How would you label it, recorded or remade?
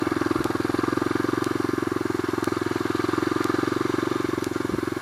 recorded